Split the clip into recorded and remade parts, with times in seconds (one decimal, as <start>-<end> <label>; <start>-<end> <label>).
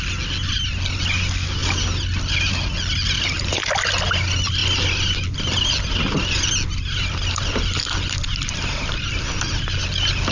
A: 0.0-10.3 recorded